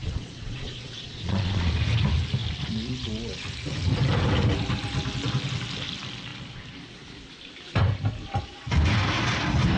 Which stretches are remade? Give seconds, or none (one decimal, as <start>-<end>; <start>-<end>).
0.0-1.7